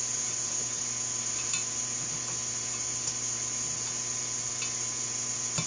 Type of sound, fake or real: real